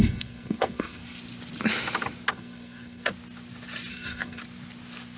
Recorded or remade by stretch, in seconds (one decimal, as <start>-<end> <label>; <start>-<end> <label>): 0.0-1.0 remade; 1.0-2.3 recorded; 2.3-3.1 remade; 3.1-3.9 recorded; 3.9-4.4 remade; 4.4-5.2 recorded